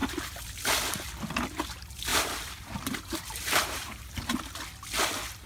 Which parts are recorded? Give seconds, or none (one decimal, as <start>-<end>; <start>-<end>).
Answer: 0.0-2.1; 4.3-5.5